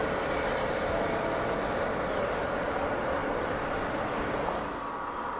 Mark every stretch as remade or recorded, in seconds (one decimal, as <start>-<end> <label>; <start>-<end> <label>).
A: 0.0-1.2 remade; 1.2-3.2 recorded; 3.2-4.2 remade; 4.2-5.4 recorded